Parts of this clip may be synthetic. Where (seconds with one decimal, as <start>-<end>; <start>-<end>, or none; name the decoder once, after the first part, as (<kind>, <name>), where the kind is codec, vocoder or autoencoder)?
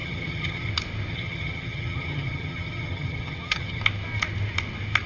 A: 0.0-0.7 (vocoder, HiFi-GAN); 1.1-3.8